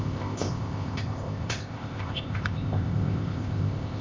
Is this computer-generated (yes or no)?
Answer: yes